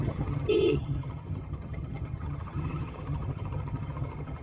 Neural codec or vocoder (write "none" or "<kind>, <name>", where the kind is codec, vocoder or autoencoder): vocoder, HiFi-GAN